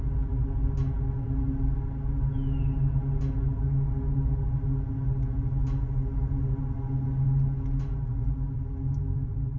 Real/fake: real